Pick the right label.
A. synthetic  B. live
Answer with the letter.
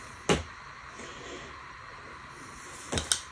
B